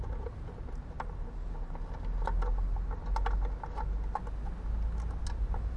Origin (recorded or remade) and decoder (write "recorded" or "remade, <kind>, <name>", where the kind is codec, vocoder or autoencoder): recorded